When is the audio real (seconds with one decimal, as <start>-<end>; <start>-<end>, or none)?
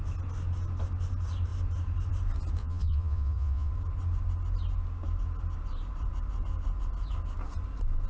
0.0-2.6; 3.7-8.1